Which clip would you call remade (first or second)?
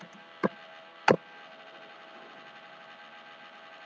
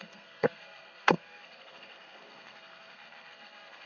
second